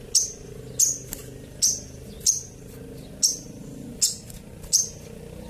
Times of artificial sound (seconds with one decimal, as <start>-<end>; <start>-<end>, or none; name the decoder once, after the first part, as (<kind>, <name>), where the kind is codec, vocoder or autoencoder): none